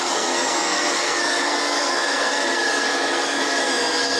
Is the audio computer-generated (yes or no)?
yes